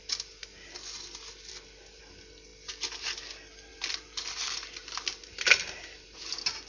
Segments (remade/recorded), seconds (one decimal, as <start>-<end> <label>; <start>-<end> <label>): 0.0-3.7 recorded; 3.7-6.3 remade; 6.3-6.7 recorded